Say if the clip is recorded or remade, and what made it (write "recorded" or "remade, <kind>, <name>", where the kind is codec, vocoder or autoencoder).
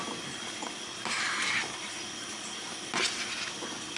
recorded